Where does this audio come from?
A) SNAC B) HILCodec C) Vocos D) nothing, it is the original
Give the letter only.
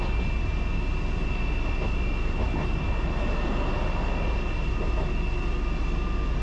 D